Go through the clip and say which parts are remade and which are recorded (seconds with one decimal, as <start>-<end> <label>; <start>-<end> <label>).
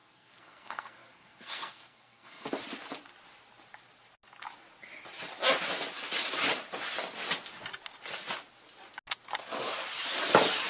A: 0.0-2.5 remade; 2.5-10.7 recorded